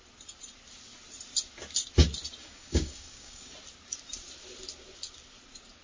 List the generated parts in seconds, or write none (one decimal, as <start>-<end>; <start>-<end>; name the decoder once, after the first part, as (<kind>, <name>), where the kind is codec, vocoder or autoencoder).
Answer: 2.4-3.5 (codec, DAC)